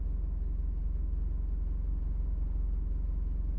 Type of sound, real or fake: real